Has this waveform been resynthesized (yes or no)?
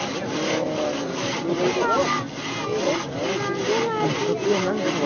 no